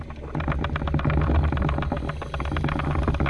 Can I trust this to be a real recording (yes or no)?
yes